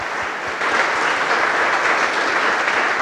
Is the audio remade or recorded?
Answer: recorded